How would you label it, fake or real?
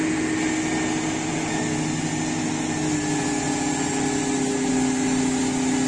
real